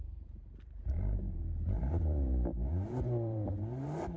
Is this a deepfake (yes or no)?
yes